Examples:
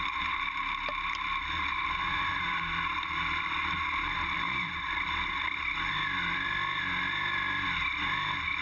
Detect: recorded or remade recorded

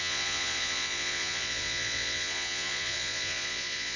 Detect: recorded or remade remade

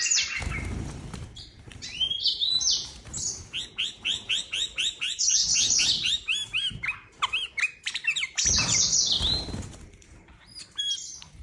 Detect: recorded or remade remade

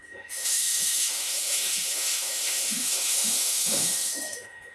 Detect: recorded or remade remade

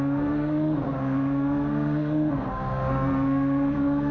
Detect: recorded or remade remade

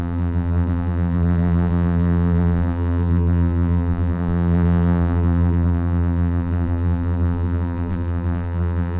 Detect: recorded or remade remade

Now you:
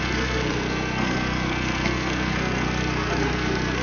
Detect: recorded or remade remade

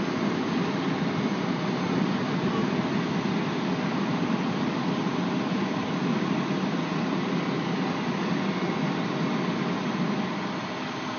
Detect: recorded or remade recorded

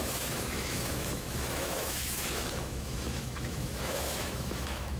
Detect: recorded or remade remade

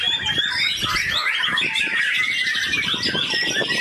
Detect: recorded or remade recorded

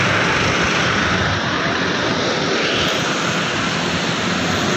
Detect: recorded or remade remade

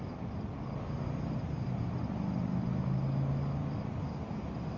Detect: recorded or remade recorded